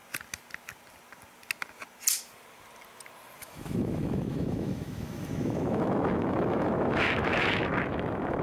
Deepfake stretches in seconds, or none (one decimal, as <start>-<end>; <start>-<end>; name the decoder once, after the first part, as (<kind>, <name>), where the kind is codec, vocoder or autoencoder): 3.4-8.4 (autoencoder, DAC-VAE)